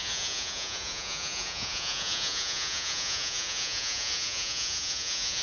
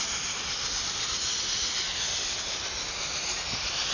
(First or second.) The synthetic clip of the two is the first